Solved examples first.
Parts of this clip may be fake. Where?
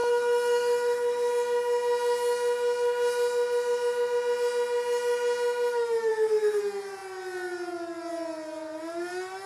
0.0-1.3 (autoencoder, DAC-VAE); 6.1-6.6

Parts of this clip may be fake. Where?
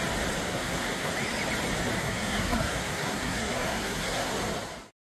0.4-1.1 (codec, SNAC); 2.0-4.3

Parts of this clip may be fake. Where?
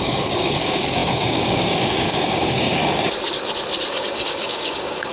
0.0-2.8 (codec, DAC); 3.9-5.1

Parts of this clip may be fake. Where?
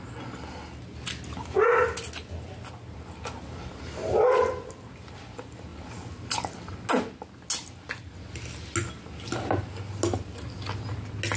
none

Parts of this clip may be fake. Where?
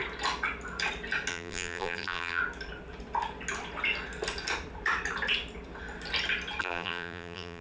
1.3-2.4 (vocoder, BigVGAN v2); 6.6-7.6